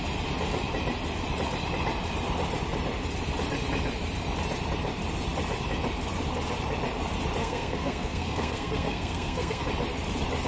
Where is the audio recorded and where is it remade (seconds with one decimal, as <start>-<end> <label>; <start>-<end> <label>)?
0.0-7.4 recorded; 7.4-9.6 remade; 9.6-10.5 recorded

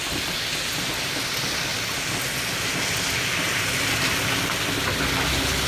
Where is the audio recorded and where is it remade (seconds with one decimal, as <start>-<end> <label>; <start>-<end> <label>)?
0.0-5.7 recorded

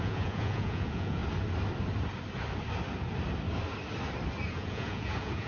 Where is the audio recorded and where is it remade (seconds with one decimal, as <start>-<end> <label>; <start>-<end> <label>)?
0.0-1.2 remade; 1.2-4.5 recorded; 4.5-5.5 remade

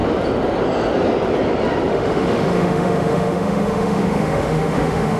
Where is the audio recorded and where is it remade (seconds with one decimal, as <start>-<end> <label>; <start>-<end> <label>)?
0.0-1.9 recorded; 1.9-5.2 remade

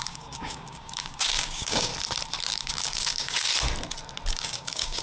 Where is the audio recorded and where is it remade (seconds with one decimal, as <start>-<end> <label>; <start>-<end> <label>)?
0.0-1.9 remade; 1.9-2.5 recorded; 2.5-3.5 remade; 3.5-4.3 recorded; 4.3-5.0 remade

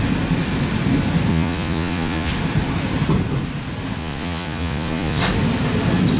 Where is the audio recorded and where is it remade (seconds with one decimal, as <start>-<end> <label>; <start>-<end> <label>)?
0.0-1.3 recorded; 1.3-2.3 remade; 2.3-4.0 recorded; 4.0-5.2 remade; 5.2-6.2 recorded

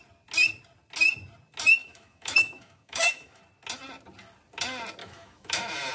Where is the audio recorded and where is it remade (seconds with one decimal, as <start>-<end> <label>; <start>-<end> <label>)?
0.0-1.8 recorded; 1.8-3.4 remade; 3.4-5.0 recorded; 5.0-5.9 remade